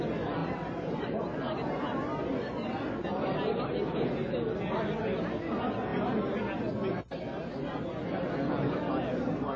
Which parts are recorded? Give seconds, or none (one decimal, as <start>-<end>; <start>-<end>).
0.0-0.4; 1.4-9.6